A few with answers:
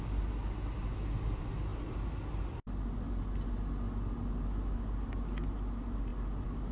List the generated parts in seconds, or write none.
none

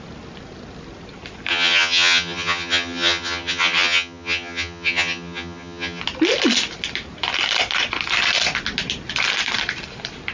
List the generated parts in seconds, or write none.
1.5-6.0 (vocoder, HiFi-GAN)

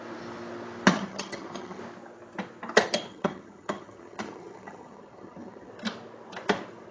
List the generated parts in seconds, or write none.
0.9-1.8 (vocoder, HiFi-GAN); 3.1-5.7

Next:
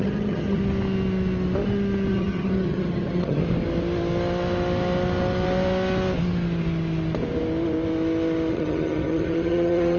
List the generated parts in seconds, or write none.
0.0-0.6 (vocoder, HiFi-GAN); 2.1-3.4; 8.5-10.0